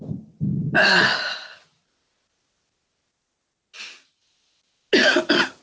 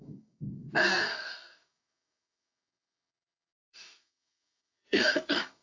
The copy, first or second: second